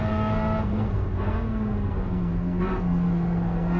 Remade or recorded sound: remade